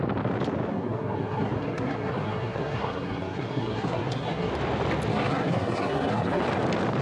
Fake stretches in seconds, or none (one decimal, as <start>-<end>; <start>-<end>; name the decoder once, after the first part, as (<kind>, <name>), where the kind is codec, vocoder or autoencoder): 0.7-4.5 (codec, SNAC); 5.1-6.4